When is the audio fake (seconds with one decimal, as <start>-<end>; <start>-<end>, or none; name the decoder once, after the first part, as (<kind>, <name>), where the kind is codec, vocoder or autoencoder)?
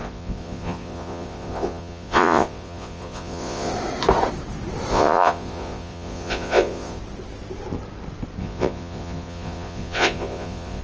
0.0-3.7 (vocoder, Vocos); 4.9-7.0; 8.4-10.8